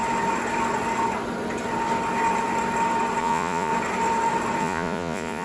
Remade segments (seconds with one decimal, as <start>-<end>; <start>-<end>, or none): 3.2-3.7; 4.6-5.4